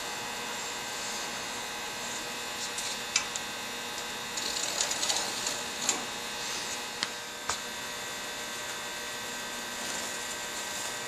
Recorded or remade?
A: recorded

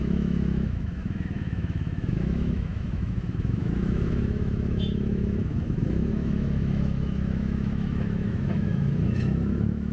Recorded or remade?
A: remade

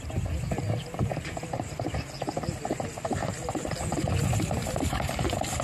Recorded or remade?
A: recorded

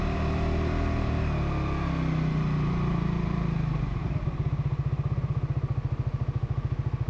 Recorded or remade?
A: recorded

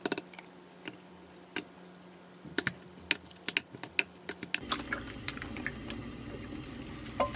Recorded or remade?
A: recorded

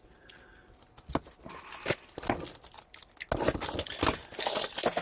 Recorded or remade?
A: recorded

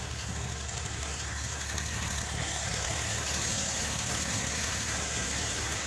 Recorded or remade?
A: remade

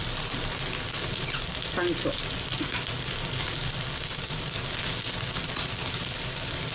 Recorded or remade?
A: recorded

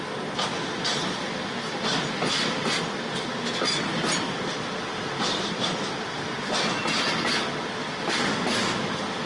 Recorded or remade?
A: recorded